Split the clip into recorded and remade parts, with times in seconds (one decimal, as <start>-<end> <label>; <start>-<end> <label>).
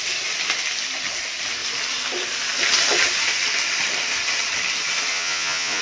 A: 0.0-5.1 recorded; 5.1-5.8 remade